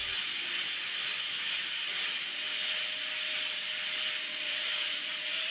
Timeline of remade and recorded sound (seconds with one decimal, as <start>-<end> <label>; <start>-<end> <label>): 0.0-4.3 recorded; 4.3-5.5 remade